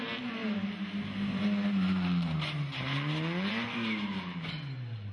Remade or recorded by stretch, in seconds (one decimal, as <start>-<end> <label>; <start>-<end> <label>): 0.0-5.1 recorded